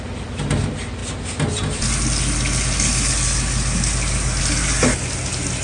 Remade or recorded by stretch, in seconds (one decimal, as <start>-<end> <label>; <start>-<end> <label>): 0.0-5.6 recorded